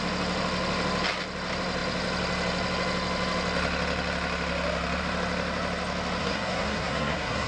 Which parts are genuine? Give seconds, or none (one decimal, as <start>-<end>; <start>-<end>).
0.0-6.2